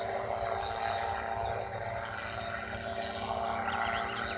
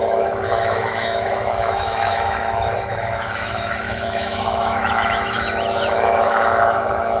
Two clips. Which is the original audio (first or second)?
first